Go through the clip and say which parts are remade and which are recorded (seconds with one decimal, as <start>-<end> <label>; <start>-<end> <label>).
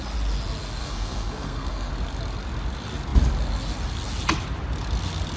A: 0.0-0.8 recorded; 0.8-1.9 remade; 1.9-5.4 recorded